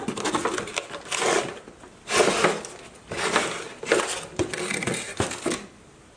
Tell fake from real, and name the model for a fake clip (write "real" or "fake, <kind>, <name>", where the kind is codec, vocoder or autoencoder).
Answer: real